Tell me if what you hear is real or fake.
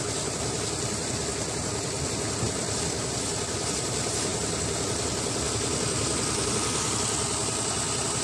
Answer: real